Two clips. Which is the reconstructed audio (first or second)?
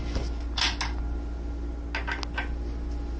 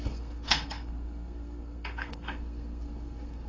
second